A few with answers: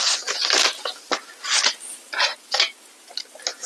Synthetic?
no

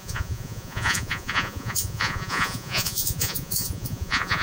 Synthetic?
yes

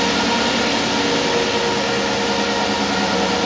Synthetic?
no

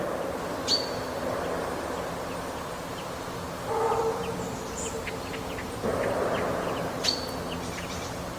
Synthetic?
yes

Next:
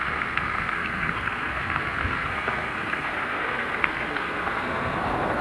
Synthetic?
yes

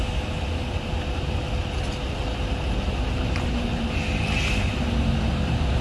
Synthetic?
no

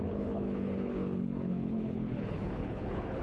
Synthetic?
yes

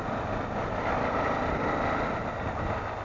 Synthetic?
no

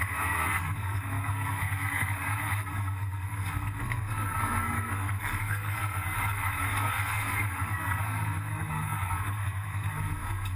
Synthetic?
yes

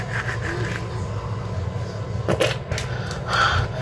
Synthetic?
no